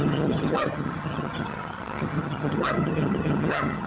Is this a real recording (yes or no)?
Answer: no